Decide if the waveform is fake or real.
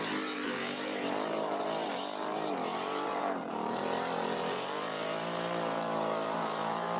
fake